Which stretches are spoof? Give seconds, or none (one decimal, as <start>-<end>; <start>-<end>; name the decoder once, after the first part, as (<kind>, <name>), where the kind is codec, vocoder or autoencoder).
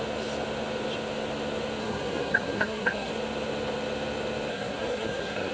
1.8-3.1 (codec, SNAC); 4.5-5.5